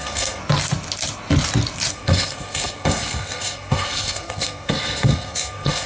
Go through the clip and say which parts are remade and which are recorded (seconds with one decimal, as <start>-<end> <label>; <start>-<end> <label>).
0.0-0.4 remade; 0.4-1.9 recorded; 1.9-5.9 remade